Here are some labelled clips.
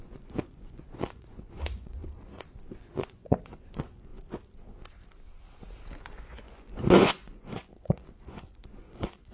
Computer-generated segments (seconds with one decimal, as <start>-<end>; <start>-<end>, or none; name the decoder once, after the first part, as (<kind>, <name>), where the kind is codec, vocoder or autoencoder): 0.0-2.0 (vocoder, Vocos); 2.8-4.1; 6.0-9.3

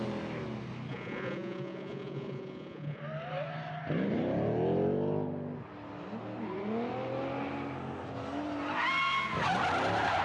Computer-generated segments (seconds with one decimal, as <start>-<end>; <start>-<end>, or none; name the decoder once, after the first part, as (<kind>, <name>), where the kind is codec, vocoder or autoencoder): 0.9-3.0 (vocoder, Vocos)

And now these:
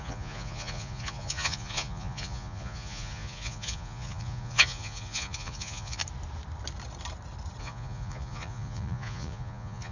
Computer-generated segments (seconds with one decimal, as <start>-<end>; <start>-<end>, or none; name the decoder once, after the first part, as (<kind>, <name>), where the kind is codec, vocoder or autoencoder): 0.0-6.0 (vocoder, Vocos); 7.6-9.9